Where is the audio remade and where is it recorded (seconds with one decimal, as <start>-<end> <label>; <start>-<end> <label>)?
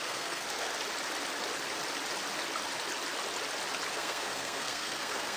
0.0-0.7 remade; 0.7-3.9 recorded; 3.9-5.4 remade